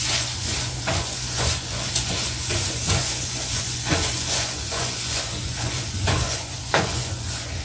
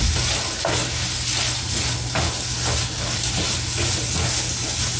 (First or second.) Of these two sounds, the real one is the second